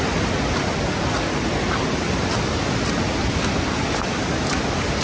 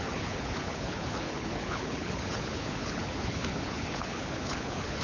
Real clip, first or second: first